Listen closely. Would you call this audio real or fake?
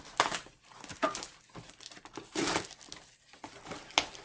real